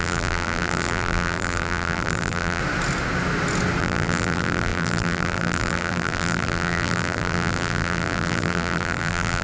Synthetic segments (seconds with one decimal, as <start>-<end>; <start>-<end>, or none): 0.0-2.6; 3.8-9.4